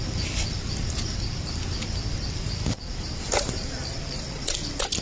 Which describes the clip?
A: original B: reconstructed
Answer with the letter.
B